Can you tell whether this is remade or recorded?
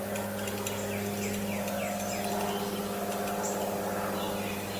recorded